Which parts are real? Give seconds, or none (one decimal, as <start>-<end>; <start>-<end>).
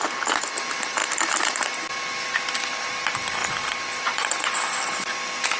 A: 0.0-1.0; 2.0-3.4